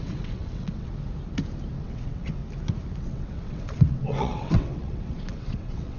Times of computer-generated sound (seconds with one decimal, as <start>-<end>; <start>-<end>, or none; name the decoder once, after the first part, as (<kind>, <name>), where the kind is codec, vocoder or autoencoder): 0.0-0.9 (vocoder, WaveNeXt); 1.7-2.4; 3.0-6.0